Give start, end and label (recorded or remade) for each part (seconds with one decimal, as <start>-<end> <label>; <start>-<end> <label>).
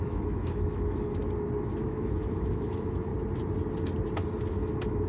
0.0-1.2 remade; 1.2-1.8 recorded; 1.8-3.1 remade; 3.1-4.5 recorded; 4.5-5.1 remade